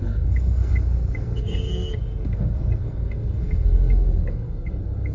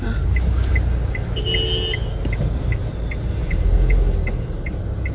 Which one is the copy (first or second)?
first